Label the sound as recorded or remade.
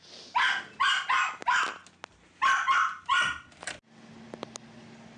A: recorded